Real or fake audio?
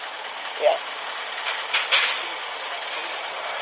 real